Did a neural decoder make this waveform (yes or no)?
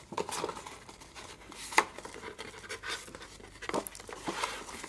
no